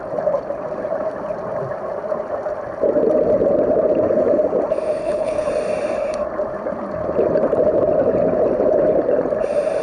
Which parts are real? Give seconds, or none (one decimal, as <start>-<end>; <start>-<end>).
0.0-5.0; 5.5-9.8